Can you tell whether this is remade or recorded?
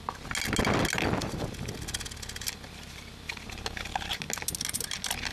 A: recorded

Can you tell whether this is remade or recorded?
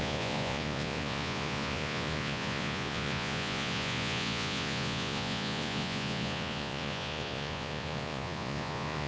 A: remade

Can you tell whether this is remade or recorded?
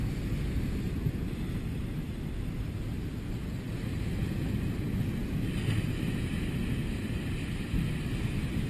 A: recorded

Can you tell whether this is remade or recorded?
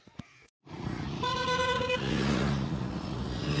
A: remade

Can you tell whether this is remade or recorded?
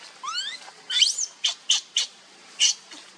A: recorded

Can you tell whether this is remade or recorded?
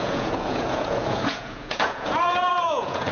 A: remade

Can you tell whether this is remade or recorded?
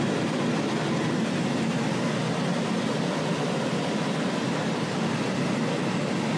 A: recorded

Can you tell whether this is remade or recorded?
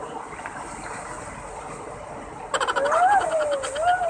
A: recorded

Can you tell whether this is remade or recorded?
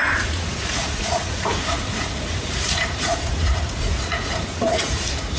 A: remade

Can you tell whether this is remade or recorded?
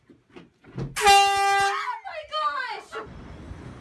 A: recorded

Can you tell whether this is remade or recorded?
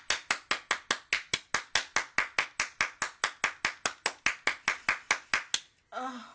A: recorded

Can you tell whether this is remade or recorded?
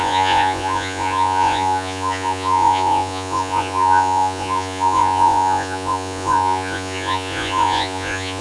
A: remade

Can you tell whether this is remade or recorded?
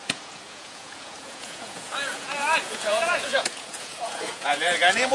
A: remade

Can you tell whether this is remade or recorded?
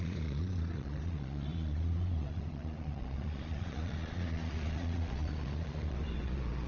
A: remade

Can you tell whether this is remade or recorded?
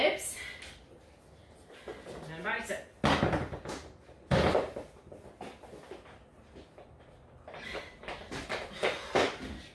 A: recorded